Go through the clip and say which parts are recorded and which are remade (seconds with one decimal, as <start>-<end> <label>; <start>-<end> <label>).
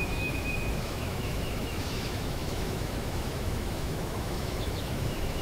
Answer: 0.0-5.4 remade